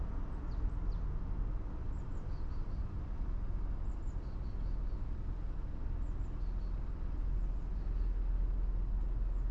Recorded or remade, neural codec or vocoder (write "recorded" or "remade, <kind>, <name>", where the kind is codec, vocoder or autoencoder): recorded